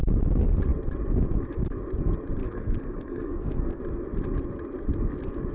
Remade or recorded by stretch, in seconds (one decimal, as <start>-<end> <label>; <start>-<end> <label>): 0.0-2.4 recorded; 2.4-3.8 remade; 3.8-5.5 recorded